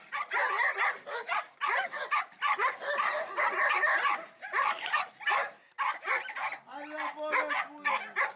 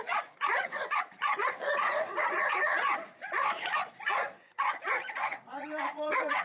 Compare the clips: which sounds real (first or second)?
first